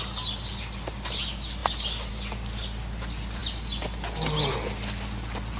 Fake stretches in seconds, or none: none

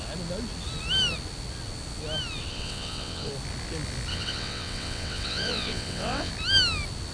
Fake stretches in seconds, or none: 2.5-3.3 (vocoder, WaveNeXt); 4.1-6.3

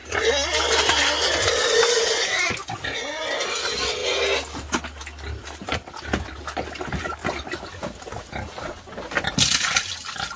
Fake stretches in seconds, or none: none

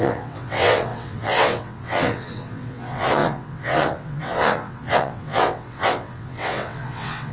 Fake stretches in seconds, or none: 0.0-7.3 (vocoder, WaveNeXt)

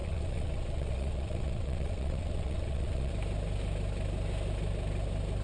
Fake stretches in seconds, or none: 0.0-3.1 (vocoder, WaveNeXt)